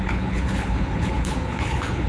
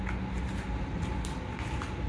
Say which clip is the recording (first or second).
second